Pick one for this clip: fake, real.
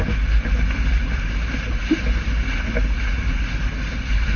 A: real